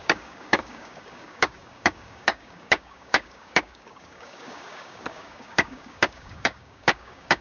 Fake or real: fake